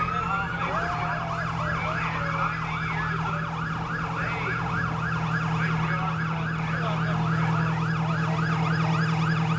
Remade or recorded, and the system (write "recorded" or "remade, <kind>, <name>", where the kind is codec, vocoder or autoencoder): recorded